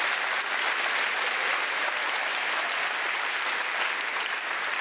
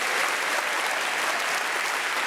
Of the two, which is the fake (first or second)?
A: second